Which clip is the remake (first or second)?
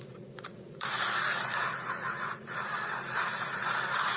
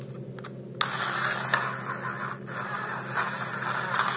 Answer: first